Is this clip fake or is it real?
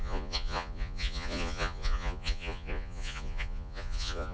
fake